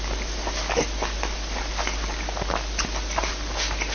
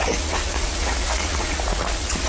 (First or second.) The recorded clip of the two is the first